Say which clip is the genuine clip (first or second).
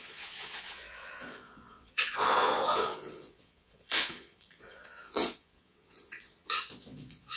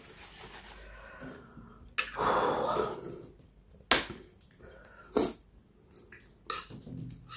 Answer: second